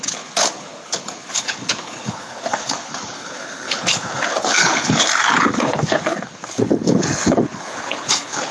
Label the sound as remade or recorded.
remade